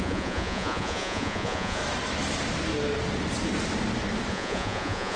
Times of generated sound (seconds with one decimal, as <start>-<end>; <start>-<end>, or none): 0.0-1.8; 4.3-5.2